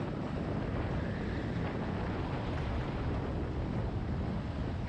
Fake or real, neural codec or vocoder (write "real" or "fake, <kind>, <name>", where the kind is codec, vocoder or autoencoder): real